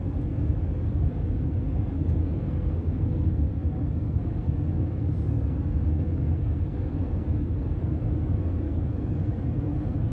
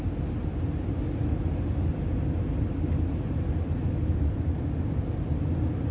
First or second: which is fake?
first